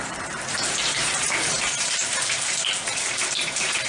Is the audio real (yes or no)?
no